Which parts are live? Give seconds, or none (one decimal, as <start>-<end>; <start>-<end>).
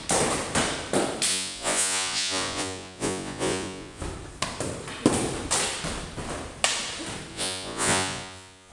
0.0-1.3; 4.0-7.3